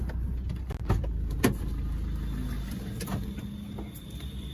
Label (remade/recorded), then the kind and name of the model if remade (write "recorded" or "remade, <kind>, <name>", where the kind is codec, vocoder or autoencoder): recorded